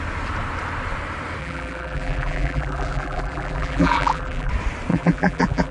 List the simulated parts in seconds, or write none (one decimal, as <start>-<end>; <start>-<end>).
1.4-4.5; 4.9-5.7